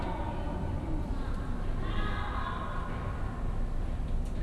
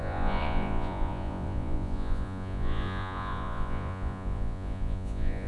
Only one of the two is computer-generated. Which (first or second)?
second